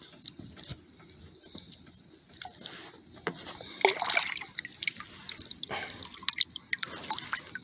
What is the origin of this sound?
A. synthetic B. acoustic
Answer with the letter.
B